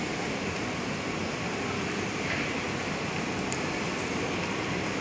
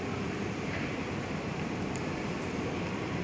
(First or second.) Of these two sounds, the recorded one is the first